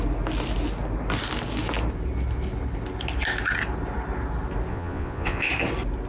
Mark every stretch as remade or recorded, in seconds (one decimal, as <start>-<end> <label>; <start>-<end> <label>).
0.0-4.7 recorded; 4.7-5.5 remade; 5.5-6.1 recorded